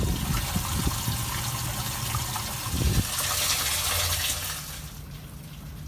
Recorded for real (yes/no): yes